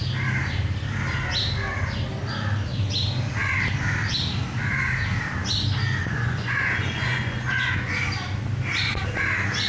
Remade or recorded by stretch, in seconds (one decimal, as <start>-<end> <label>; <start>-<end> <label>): 0.0-6.0 recorded; 6.0-8.0 remade; 8.0-9.7 recorded